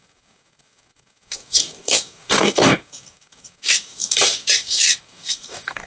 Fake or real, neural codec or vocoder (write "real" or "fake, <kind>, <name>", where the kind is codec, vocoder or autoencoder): fake, codec, DAC